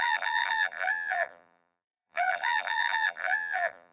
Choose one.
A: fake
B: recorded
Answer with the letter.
A